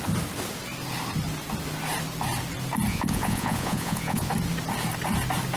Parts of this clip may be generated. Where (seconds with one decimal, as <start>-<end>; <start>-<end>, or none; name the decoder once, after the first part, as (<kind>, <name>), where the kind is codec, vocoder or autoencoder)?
2.9-4.3 (vocoder, Vocos)